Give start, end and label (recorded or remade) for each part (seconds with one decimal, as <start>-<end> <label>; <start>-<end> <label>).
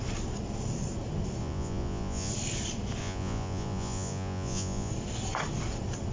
0.0-1.4 recorded; 1.4-2.3 remade; 2.3-3.0 recorded; 3.0-4.9 remade; 4.9-6.1 recorded